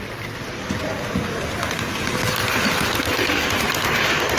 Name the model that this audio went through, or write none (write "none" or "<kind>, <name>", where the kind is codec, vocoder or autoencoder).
none